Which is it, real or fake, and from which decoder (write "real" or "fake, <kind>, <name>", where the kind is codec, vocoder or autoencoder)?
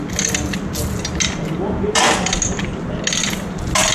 real